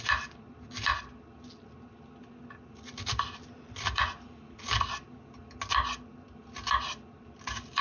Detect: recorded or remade recorded